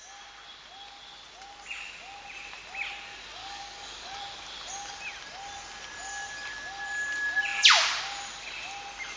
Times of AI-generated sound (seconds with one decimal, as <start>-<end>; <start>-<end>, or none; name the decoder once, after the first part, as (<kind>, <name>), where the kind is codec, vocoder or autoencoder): 3.4-4.2 (codec, DAC)